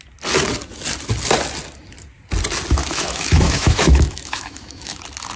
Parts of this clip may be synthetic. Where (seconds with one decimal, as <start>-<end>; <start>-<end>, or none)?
2.8-5.0